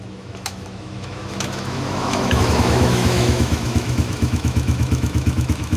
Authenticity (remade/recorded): remade